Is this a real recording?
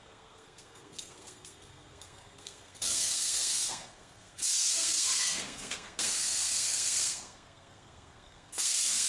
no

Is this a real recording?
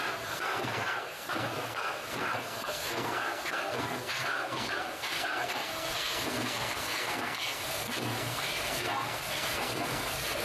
no